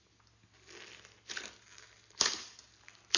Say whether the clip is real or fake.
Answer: real